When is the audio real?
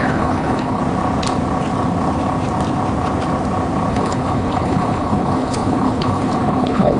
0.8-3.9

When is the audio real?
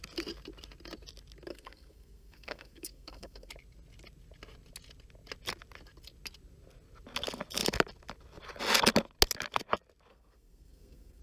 0.0-1.5; 3.5-10.1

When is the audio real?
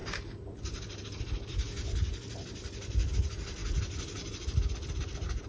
0.0-5.5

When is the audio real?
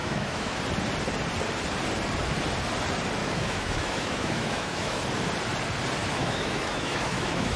0.6-3.2; 5.0-6.0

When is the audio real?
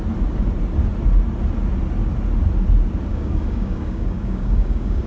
0.0-3.1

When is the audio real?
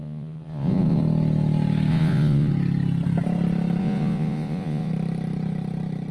1.0-1.9; 2.5-3.8; 4.9-6.1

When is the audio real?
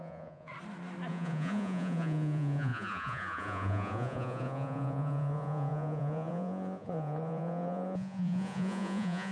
0.5-1.1